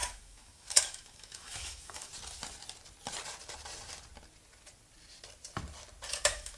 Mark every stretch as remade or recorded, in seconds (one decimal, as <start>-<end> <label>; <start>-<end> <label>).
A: 0.0-2.1 remade; 2.1-6.1 recorded; 6.1-6.6 remade